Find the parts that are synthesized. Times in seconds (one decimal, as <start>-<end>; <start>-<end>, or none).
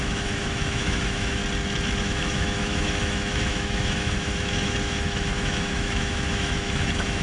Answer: 0.0-1.4; 2.0-7.2